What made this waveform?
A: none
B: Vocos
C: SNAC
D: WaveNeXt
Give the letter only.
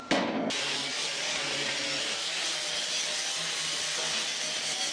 A